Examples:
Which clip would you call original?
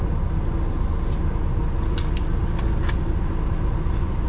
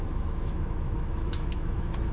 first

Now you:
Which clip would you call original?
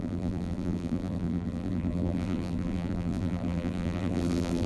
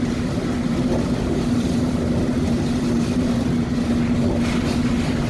second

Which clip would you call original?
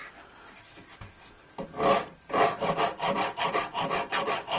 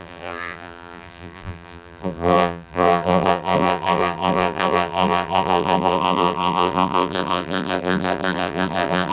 first